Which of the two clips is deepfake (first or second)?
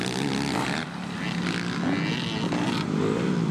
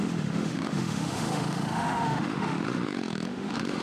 second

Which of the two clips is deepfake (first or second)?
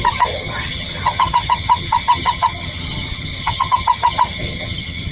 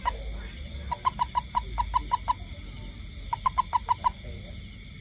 first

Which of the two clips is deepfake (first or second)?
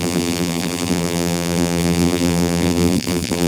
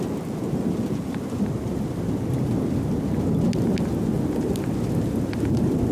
first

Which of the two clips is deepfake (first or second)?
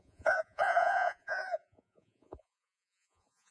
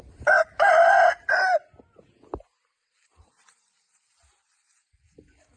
first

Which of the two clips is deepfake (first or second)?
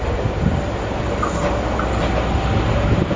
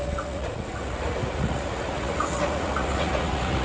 second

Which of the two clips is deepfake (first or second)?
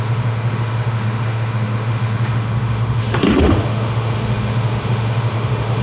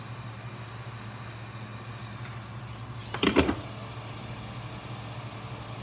first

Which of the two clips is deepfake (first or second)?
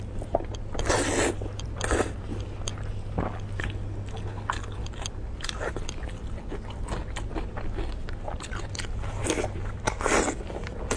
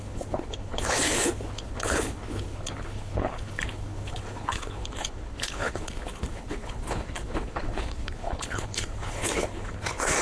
second